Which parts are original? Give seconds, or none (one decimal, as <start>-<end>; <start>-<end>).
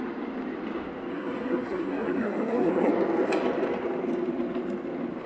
0.0-1.1; 2.9-5.3